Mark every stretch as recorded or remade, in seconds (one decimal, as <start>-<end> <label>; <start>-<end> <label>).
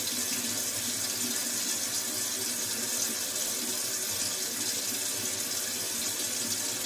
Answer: 0.0-1.4 remade; 1.4-5.1 recorded; 5.1-6.9 remade